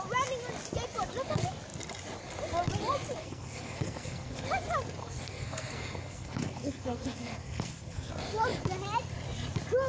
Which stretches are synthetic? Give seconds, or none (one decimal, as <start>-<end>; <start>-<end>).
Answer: 3.2-4.4; 5.0-8.1